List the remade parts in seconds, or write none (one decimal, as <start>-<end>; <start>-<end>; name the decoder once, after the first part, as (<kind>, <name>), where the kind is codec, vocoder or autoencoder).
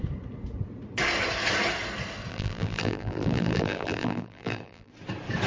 2.3-4.9 (vocoder, BigVGAN v2)